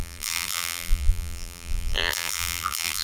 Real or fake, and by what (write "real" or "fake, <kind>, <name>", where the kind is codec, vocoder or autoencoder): fake, vocoder, BigVGAN v2